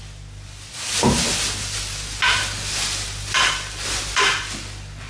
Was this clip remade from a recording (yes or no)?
no